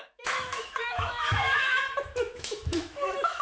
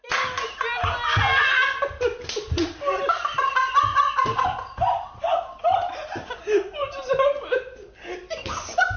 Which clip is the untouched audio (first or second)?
second